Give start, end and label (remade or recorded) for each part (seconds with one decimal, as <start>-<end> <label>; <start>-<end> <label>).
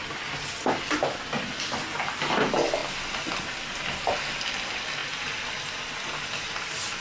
0.0-2.8 recorded; 2.8-3.4 remade; 3.4-5.0 recorded; 5.0-5.9 remade; 5.9-7.0 recorded